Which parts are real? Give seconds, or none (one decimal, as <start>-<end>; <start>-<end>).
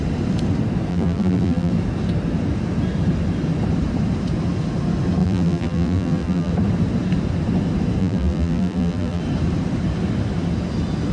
0.0-0.9; 1.7-5.2; 6.5-8.0; 9.2-11.1